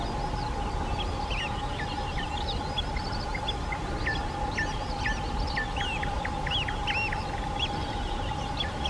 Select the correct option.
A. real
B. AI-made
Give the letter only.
A